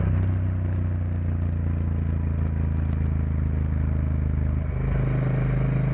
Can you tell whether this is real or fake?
real